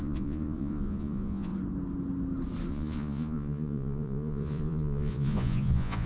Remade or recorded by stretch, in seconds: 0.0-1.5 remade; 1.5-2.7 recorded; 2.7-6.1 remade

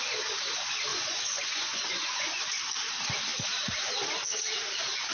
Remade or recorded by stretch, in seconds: 0.0-0.9 recorded; 0.9-2.4 remade; 2.4-5.1 recorded

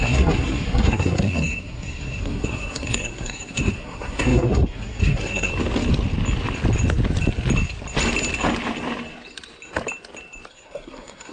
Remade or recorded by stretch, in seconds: 0.0-5.5 remade; 5.5-10.5 recorded; 10.5-11.3 remade